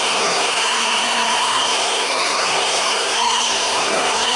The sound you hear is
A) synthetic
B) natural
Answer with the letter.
A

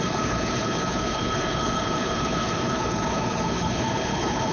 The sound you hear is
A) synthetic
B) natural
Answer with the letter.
A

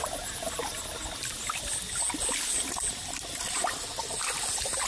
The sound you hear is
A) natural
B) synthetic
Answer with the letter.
A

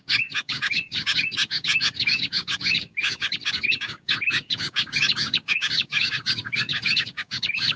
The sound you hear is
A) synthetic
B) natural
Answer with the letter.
A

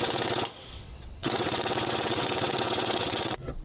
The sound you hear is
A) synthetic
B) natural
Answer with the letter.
A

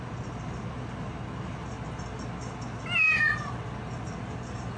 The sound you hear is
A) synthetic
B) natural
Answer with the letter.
B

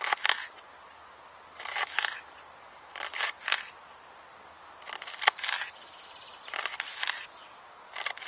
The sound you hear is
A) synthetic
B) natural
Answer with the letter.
B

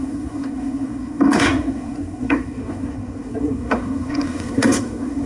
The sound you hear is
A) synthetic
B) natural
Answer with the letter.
A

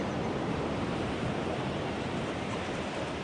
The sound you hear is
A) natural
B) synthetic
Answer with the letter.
A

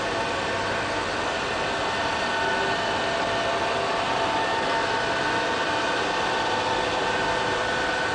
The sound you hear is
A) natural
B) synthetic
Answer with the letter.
A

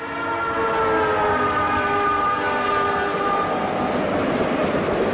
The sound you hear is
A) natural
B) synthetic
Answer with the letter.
A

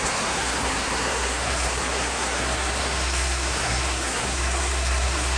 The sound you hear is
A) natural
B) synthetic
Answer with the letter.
B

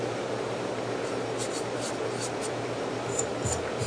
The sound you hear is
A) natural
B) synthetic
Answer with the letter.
A